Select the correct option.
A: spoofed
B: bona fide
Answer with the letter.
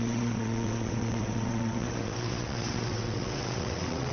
A